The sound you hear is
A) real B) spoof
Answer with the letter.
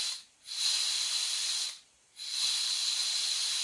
B